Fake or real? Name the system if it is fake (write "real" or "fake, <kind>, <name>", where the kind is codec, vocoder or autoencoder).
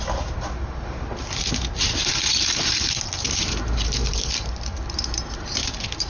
fake, vocoder, BigVGAN v2